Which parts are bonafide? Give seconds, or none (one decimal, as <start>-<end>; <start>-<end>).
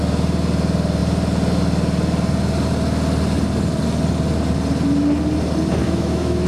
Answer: 0.0-5.8